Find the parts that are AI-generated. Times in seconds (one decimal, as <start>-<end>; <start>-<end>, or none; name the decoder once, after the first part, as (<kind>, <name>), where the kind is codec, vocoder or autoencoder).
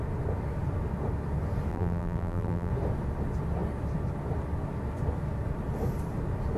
1.7-2.7 (vocoder, BigVGAN v2)